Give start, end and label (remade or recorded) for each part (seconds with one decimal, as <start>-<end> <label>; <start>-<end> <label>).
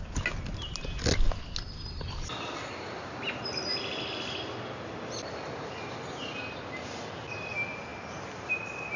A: 0.0-9.0 recorded